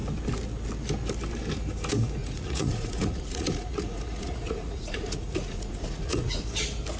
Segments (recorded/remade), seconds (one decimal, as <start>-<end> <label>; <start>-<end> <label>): 0.0-2.2 recorded; 2.2-6.4 remade; 6.4-7.0 recorded